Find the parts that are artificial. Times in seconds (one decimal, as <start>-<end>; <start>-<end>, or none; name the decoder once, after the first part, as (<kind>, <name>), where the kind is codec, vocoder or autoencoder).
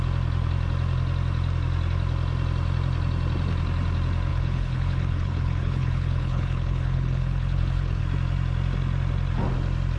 4.3-8.0 (codec, HILCodec)